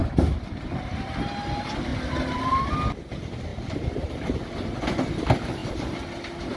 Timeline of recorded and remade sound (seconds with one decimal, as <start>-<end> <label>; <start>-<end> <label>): 0.0-3.5 recorded; 3.5-4.1 remade; 4.1-6.6 recorded